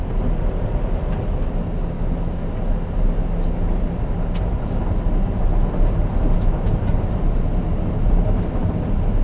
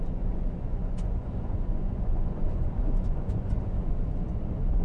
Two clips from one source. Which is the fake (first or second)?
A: second